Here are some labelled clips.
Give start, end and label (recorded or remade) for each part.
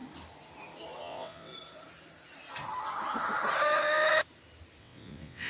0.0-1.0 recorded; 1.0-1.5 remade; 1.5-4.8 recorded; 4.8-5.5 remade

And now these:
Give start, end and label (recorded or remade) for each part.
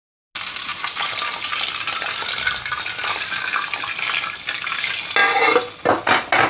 0.0-6.5 recorded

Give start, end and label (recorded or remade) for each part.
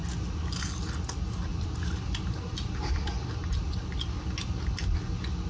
0.0-1.5 recorded; 1.5-2.9 remade; 2.9-5.5 recorded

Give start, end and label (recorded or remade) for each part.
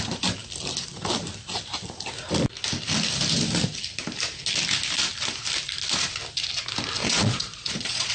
0.0-7.0 recorded; 7.0-8.1 remade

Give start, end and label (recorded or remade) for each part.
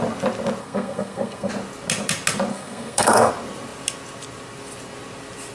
0.0-0.6 recorded; 0.6-1.5 remade; 1.5-2.5 recorded; 2.5-3.3 remade; 3.3-5.5 recorded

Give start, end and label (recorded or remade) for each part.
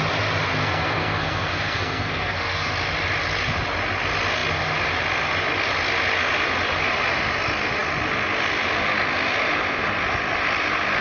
0.0-0.6 recorded; 0.6-2.7 remade; 2.7-11.0 recorded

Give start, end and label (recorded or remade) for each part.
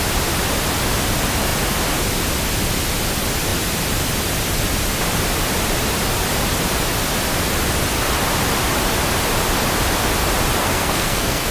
0.0-10.6 recorded; 10.6-11.5 remade